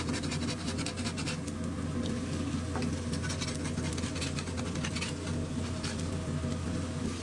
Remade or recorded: recorded